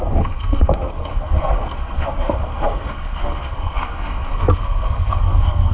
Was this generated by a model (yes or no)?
yes